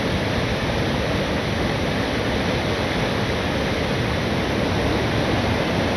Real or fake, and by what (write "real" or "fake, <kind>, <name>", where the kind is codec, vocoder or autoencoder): real